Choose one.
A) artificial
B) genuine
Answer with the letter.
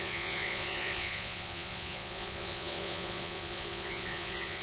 A